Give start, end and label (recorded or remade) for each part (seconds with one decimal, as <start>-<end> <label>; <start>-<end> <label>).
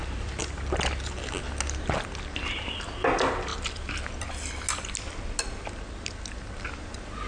0.0-7.3 recorded